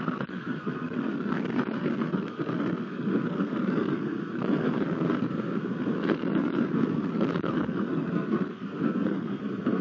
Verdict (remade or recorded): remade